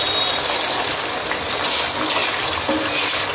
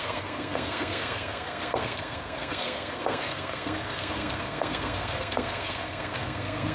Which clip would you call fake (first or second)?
second